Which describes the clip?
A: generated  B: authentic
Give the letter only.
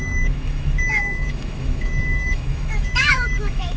A